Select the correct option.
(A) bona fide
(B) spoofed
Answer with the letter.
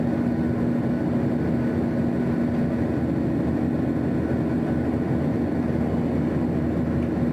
A